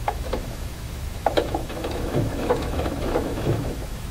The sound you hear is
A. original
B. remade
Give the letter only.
B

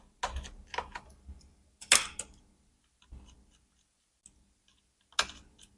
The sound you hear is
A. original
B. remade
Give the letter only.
A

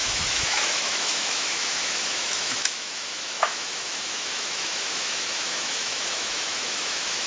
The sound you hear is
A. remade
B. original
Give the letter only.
A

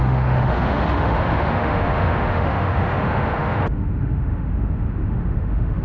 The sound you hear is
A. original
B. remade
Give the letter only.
B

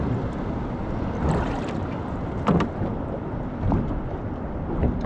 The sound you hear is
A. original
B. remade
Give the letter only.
A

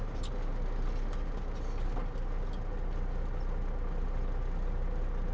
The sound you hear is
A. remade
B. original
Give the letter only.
B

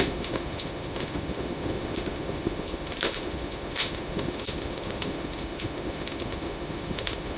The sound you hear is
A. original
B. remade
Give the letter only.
B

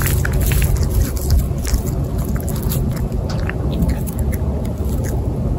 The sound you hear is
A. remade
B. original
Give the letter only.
B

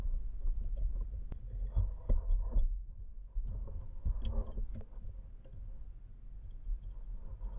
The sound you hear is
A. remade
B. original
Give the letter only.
B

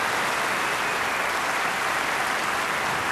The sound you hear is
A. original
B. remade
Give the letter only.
A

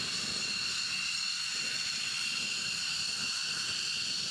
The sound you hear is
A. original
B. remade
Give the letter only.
A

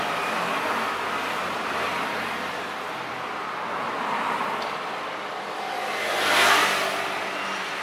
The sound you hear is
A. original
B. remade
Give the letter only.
A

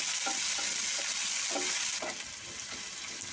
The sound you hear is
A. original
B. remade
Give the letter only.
A